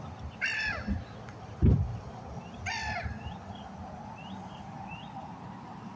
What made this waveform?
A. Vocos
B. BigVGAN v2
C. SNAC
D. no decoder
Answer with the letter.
D